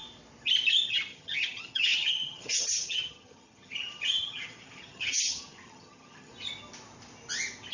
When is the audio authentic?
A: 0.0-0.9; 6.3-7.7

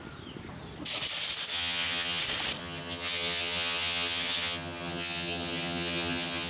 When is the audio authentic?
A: 0.0-1.5; 2.2-2.6

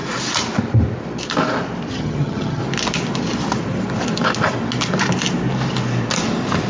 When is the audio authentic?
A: 0.0-1.9; 2.6-6.7

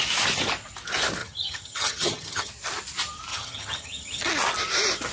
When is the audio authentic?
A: 0.0-1.2; 2.5-3.3; 4.3-5.1

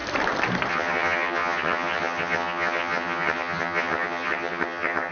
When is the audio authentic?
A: 0.0-0.7

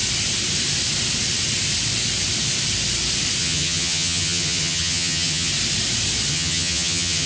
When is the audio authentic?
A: 0.0-3.4; 5.5-6.3

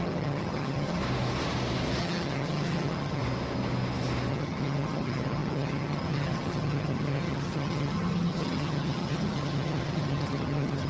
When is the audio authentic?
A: 1.0-2.0; 3.2-4.3

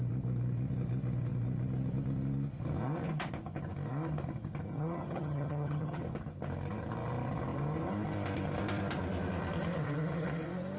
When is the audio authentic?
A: 0.0-4.7; 6.0-10.8